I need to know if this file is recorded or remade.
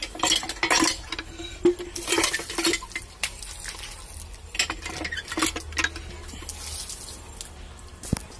recorded